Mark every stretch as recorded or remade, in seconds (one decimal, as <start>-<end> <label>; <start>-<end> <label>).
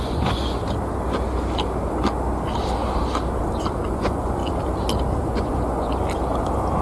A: 0.0-0.6 remade; 0.6-3.8 recorded; 3.8-4.4 remade; 4.4-5.2 recorded; 5.2-5.9 remade; 5.9-6.8 recorded